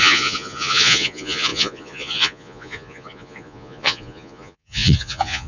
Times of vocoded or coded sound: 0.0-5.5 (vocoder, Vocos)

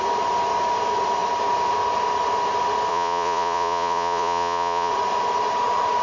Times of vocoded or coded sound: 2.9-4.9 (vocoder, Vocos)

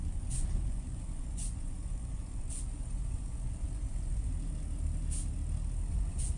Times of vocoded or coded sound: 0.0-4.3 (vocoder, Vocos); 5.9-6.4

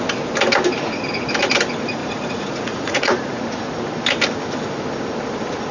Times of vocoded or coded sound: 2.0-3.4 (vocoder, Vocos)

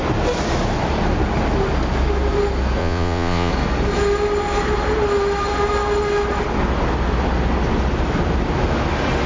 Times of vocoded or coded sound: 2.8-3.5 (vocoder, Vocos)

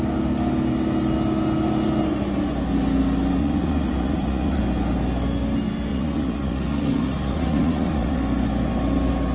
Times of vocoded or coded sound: 3.4-4.6 (vocoder, Vocos); 5.9-8.2